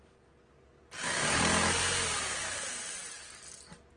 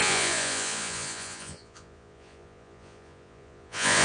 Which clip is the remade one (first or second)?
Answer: second